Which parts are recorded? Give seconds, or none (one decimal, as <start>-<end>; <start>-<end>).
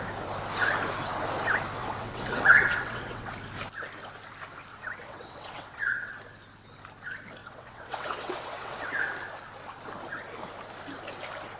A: 0.0-1.8; 3.3-4.7; 6.1-7.4; 8.9-11.6